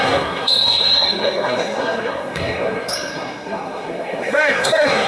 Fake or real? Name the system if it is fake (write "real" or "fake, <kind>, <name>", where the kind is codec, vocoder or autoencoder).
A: fake, codec, SNAC